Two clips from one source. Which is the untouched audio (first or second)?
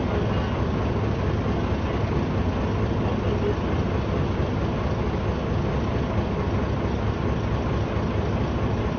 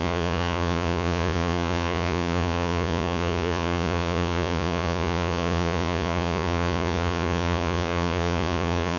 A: first